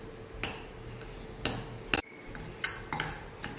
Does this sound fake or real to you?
real